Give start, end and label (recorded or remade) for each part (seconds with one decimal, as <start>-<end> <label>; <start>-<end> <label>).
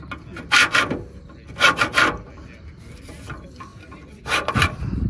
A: 0.0-5.1 recorded